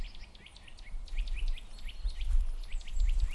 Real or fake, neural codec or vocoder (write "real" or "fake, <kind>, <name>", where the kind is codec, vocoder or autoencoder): real